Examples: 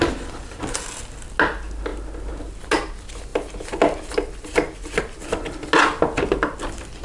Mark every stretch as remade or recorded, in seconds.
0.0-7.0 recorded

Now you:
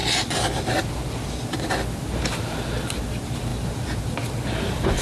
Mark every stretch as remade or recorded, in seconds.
0.0-5.0 recorded

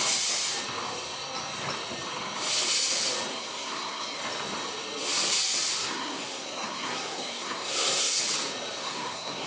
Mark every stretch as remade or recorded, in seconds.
0.0-3.3 recorded; 3.3-4.2 remade; 4.2-5.8 recorded; 5.8-8.2 remade; 8.2-8.8 recorded; 8.8-9.5 remade

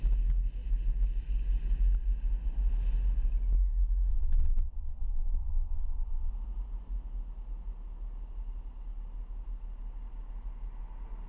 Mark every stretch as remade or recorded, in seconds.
0.0-4.1 recorded; 4.1-6.3 remade; 6.3-11.3 recorded

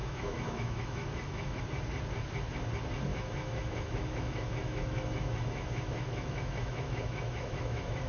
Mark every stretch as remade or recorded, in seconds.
0.0-1.6 remade; 1.6-3.1 recorded; 3.1-8.1 remade

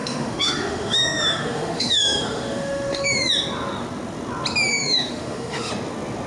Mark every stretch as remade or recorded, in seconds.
0.0-3.3 remade; 3.3-4.7 recorded; 4.7-5.7 remade; 5.7-6.3 recorded

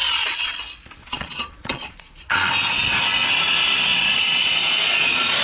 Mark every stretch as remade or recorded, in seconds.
0.0-0.6 remade; 0.6-1.0 recorded; 1.0-2.5 remade; 2.5-3.9 recorded; 3.9-5.4 remade